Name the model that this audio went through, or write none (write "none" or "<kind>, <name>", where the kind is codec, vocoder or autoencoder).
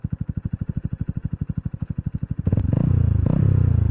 none